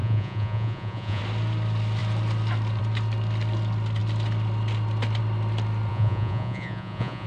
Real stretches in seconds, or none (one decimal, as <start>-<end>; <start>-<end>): 1.2-5.9